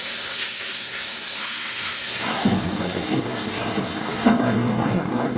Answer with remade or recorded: remade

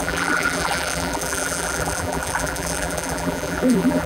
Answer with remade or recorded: remade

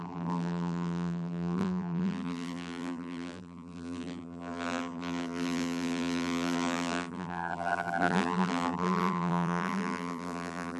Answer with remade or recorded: remade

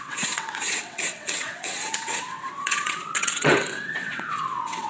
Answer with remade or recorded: remade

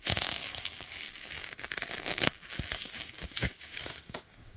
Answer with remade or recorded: remade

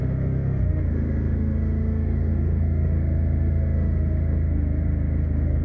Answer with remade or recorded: remade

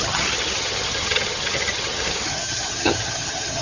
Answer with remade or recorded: remade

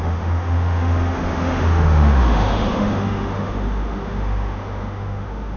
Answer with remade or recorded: remade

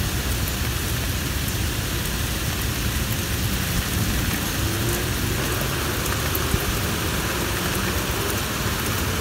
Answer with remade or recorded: recorded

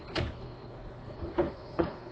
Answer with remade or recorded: remade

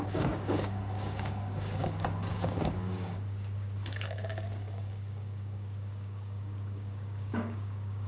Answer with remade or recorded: remade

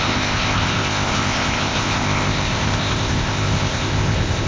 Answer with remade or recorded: remade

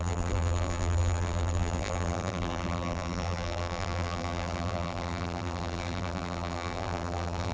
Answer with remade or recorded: remade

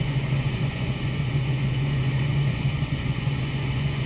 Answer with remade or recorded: remade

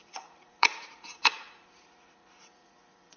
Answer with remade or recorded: remade